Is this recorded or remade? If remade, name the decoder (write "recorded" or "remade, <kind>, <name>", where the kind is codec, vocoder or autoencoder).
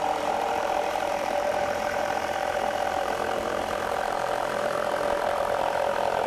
remade, vocoder, BigVGAN v2